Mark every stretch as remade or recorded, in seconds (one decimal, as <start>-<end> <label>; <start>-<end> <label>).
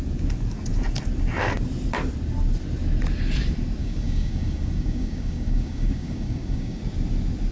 0.0-3.8 recorded; 3.8-6.8 remade; 6.8-7.5 recorded